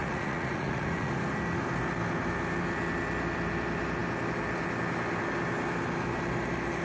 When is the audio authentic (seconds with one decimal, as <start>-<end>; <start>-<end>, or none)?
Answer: 1.1-6.8